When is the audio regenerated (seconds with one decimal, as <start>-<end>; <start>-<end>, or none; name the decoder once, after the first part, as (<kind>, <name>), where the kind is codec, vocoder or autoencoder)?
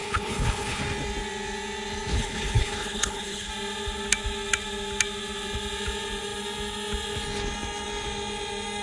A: 0.0-0.8 (codec, HILCodec); 2.1-3.5